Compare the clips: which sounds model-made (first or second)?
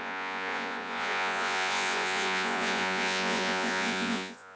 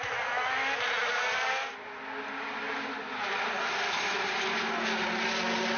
first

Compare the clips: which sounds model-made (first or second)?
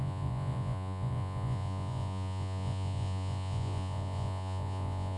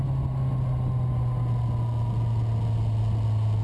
first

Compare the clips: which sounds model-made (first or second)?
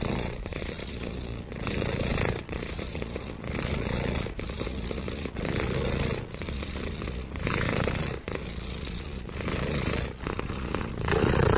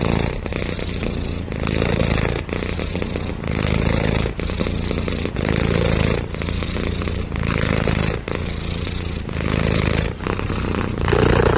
first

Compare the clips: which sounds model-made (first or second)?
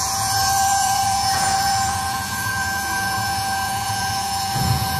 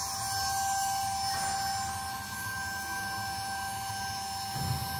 first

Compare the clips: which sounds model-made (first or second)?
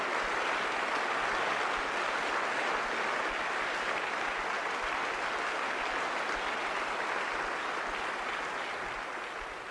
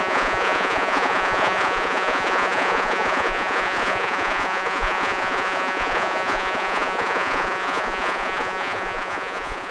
second